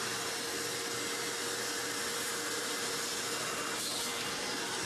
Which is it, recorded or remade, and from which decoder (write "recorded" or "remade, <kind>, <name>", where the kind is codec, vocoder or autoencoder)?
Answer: recorded